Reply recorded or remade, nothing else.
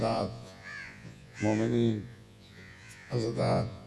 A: remade